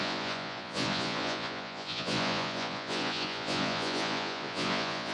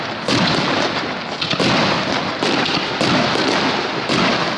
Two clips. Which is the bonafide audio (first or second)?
second